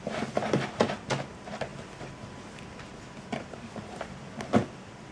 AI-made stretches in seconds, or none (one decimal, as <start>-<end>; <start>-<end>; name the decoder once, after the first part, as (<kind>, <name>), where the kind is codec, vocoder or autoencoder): none